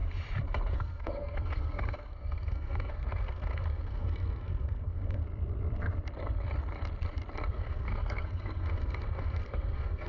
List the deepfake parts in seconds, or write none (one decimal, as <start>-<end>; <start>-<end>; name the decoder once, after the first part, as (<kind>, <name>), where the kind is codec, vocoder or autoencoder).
0.7-5.2 (codec, SNAC); 7.5-10.1